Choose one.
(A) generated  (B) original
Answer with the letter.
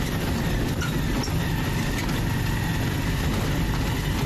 B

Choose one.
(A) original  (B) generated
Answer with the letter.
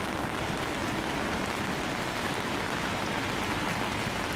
A